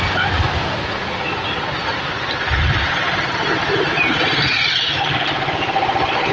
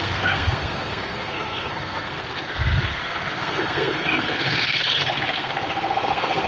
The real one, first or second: first